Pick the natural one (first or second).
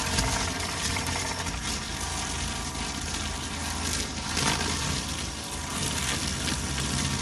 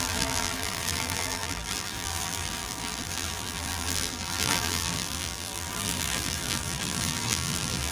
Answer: first